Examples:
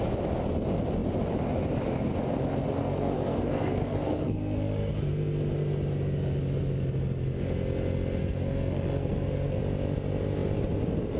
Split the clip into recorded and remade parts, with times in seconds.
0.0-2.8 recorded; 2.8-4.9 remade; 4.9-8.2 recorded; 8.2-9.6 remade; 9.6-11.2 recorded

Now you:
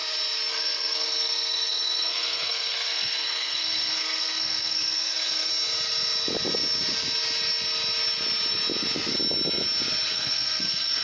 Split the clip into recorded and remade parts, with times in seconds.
0.0-0.5 recorded; 0.5-5.5 remade; 5.5-10.1 recorded; 10.1-11.0 remade

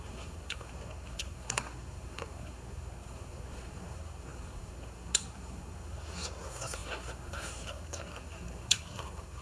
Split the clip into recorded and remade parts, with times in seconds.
0.0-9.4 remade

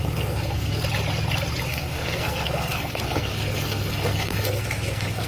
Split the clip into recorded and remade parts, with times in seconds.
0.0-0.8 remade; 0.8-1.6 recorded; 1.6-5.3 remade

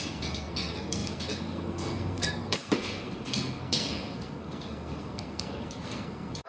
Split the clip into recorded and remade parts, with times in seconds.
0.0-6.5 remade

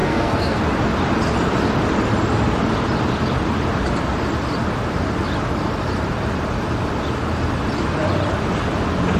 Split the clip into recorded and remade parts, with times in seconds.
0.0-0.6 remade; 0.6-9.2 recorded